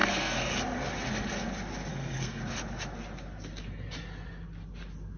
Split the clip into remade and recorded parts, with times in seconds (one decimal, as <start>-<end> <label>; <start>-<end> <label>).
0.0-0.5 remade; 0.5-1.9 recorded; 1.9-2.4 remade; 2.4-5.2 recorded